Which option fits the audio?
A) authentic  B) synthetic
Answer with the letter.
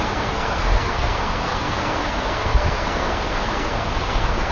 B